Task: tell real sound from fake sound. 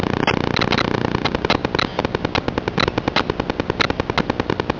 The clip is real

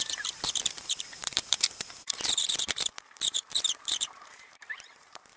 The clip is fake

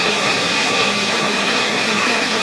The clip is fake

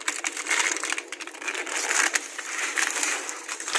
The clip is real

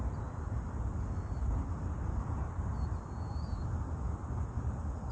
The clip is real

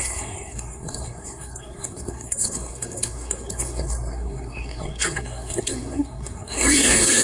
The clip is fake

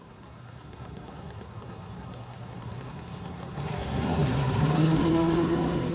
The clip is fake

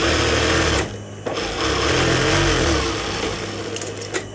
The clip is real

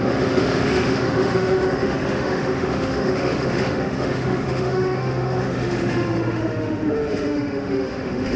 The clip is fake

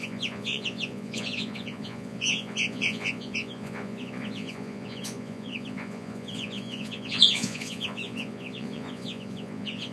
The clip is fake